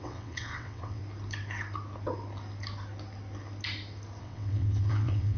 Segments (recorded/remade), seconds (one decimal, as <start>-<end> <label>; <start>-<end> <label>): 0.0-1.0 remade; 1.0-4.2 recorded; 4.2-5.4 remade